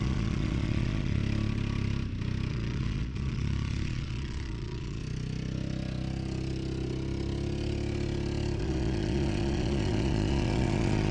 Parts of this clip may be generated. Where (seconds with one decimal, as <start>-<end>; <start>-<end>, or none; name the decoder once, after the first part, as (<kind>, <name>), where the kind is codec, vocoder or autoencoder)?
0.0-1.2 (vocoder, Vocos); 2.5-5.0; 8.6-11.1